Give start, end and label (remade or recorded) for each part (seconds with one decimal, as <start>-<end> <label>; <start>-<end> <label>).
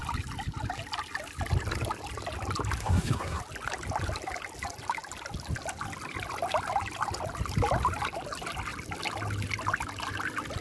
0.0-2.8 recorded; 2.8-3.4 remade; 3.4-10.6 recorded